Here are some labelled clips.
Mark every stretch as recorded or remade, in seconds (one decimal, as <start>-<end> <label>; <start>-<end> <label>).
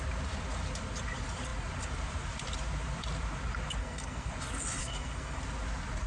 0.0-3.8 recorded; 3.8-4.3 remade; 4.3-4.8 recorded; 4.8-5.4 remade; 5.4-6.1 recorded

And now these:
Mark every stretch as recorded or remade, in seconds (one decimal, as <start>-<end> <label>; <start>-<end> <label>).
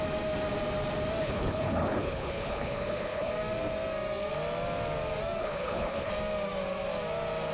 0.0-1.2 recorded; 1.2-3.3 remade; 3.3-5.4 recorded; 5.4-6.1 remade; 6.1-7.5 recorded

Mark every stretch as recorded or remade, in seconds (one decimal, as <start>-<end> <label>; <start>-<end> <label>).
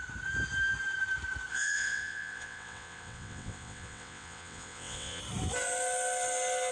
0.0-1.5 recorded; 1.5-5.2 remade; 5.2-6.7 recorded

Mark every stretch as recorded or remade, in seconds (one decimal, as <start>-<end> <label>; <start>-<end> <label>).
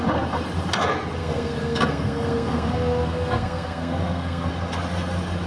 0.0-1.2 recorded; 1.2-4.5 remade; 4.5-5.5 recorded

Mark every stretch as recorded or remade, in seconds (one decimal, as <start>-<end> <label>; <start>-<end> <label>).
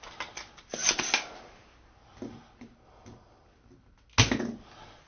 0.0-5.1 recorded